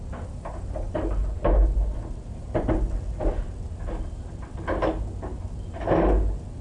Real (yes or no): yes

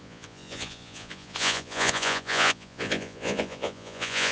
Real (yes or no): no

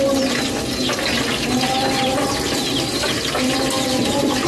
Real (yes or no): yes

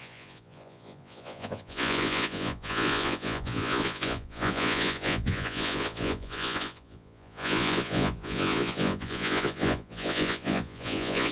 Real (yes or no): no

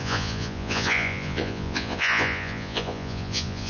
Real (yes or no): no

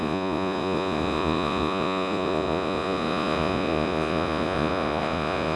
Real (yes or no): no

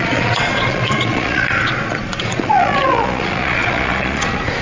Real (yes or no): no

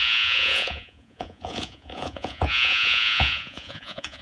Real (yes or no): no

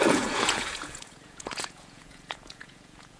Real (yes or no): no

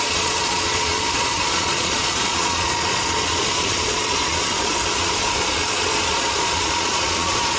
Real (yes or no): no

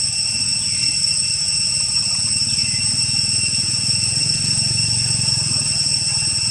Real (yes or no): no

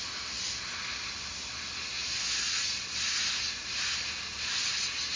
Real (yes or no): yes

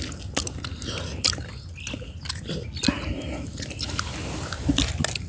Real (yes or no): yes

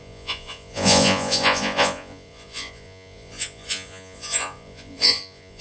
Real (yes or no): no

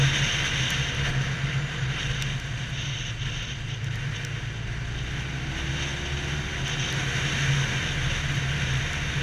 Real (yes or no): yes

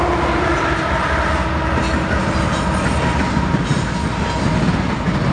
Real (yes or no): yes